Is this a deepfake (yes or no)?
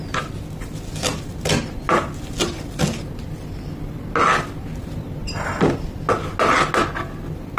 no